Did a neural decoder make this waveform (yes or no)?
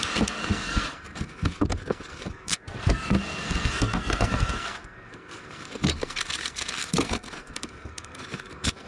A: yes